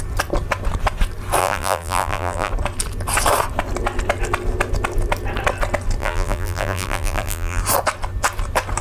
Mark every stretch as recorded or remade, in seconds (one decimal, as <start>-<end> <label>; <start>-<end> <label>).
0.0-1.4 recorded; 1.4-2.5 remade; 2.5-6.0 recorded; 6.0-7.6 remade; 7.6-8.8 recorded